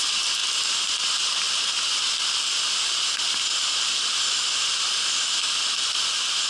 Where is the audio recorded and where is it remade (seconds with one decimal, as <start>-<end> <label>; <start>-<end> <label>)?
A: 0.0-6.5 recorded